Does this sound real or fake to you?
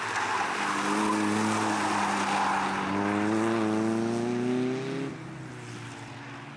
real